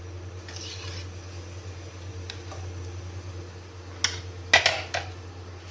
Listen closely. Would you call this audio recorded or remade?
recorded